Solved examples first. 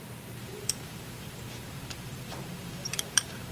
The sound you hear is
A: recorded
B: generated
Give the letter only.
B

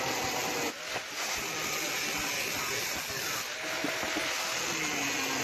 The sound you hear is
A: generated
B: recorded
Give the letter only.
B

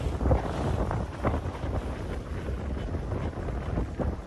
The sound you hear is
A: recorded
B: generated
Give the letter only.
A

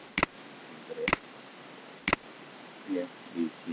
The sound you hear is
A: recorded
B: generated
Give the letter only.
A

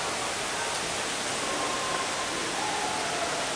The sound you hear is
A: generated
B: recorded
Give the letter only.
B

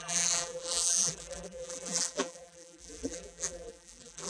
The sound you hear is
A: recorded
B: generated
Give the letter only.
B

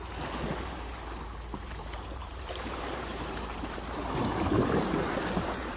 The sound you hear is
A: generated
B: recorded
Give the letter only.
A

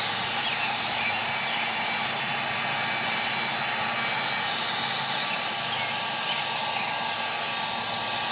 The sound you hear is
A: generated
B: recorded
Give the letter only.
B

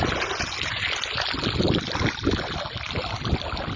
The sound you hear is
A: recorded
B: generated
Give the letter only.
A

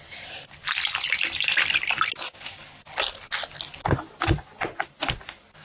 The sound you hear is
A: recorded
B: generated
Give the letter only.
B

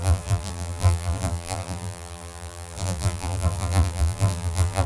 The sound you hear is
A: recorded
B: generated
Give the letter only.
B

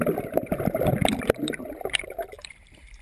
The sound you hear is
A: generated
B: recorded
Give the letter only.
A